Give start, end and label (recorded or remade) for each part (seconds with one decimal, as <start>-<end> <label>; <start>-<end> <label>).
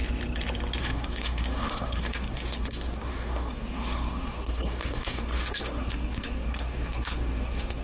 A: 0.0-0.8 recorded; 0.8-7.8 remade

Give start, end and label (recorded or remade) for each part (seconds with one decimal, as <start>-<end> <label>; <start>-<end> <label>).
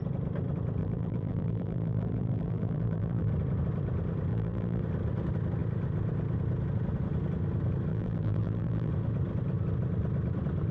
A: 0.0-0.8 recorded; 0.8-3.3 remade; 3.3-4.3 recorded; 4.3-4.8 remade; 4.8-7.9 recorded; 7.9-8.9 remade; 8.9-10.7 recorded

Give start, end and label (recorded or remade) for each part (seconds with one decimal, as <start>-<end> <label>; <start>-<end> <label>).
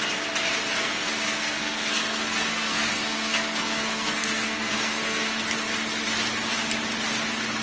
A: 0.0-0.8 recorded; 0.8-5.4 remade; 5.4-7.6 recorded